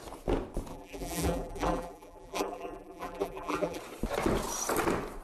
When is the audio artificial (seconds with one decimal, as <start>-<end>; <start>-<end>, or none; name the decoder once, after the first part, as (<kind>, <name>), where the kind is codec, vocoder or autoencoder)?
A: 0.7-3.8 (vocoder, BigVGAN v2)